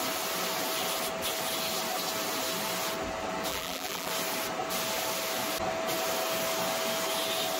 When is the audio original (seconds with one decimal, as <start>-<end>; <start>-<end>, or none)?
0.0-3.5; 4.1-7.6